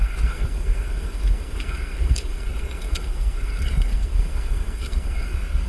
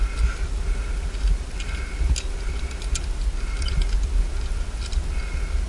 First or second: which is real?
second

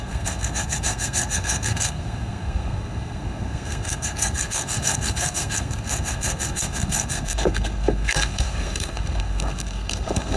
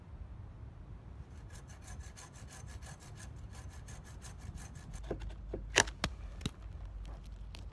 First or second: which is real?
second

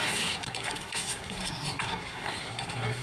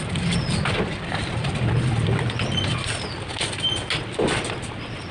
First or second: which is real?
second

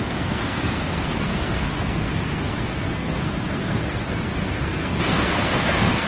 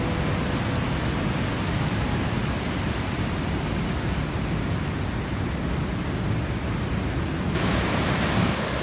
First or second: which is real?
second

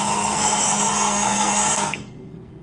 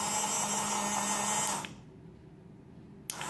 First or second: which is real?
second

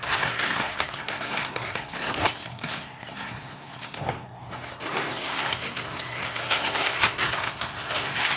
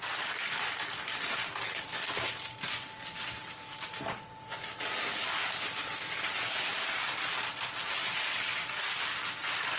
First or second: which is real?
second